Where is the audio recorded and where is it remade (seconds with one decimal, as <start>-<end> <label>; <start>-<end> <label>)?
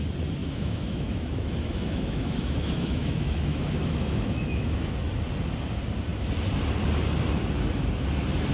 0.0-0.4 recorded; 0.4-4.9 remade; 4.9-8.5 recorded